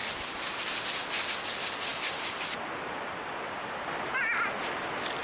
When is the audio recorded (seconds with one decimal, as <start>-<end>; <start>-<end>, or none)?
0.0-5.2